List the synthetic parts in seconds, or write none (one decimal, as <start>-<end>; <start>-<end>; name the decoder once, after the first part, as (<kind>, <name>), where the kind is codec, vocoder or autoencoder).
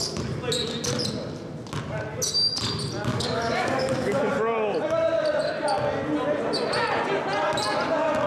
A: 3.1-4.3 (codec, DAC)